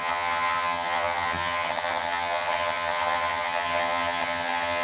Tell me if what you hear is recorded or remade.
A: remade